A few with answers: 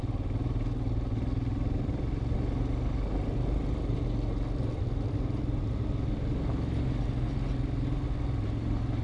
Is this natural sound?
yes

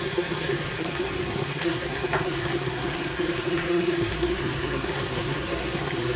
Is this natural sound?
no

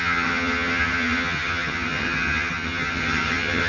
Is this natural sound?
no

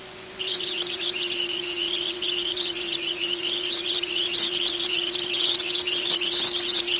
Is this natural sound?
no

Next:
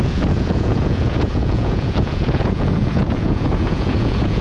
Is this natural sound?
no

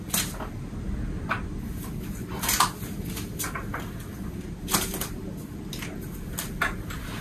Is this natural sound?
yes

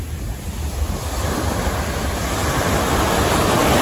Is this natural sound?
yes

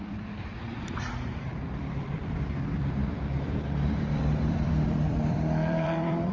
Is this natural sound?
no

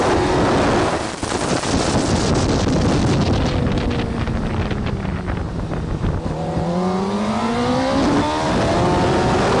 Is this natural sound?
yes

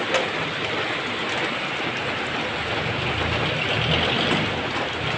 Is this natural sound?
yes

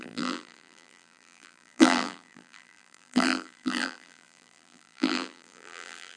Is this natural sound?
no